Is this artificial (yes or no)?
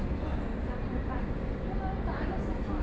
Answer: no